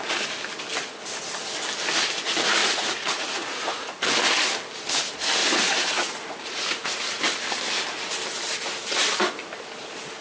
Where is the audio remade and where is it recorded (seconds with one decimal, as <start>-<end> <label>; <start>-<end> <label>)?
0.0-2.6 recorded; 2.6-4.0 remade; 4.0-5.4 recorded; 5.4-7.2 remade; 7.2-10.2 recorded